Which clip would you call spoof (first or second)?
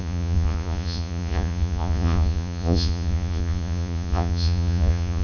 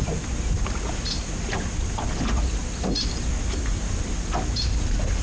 first